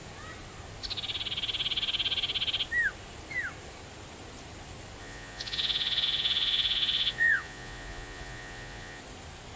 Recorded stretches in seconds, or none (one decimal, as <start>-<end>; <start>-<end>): 0.0-5.0; 9.0-9.6

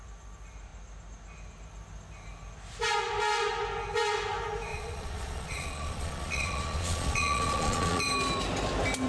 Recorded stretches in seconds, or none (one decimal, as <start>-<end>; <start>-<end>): 0.0-4.7; 8.0-9.1

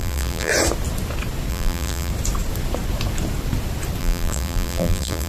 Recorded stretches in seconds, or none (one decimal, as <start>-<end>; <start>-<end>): 0.5-1.5; 2.1-4.0

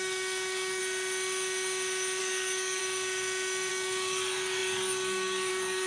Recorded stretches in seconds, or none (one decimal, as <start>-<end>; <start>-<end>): 0.8-2.2; 2.8-3.7

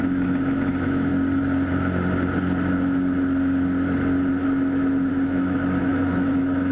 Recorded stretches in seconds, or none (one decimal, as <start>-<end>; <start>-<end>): 1.1-5.1

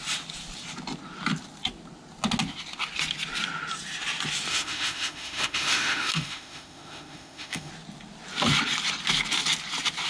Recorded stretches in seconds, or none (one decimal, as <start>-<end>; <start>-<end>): 0.0-4.5; 7.7-10.1